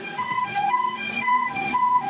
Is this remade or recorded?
remade